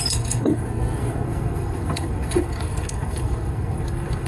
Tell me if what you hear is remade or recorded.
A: remade